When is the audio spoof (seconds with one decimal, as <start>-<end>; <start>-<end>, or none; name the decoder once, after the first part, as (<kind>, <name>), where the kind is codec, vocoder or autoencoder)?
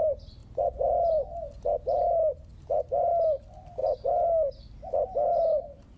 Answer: none